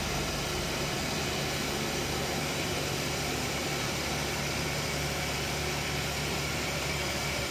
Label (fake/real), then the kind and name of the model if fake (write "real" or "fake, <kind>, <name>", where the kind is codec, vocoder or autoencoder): fake, vocoder, BigVGAN v2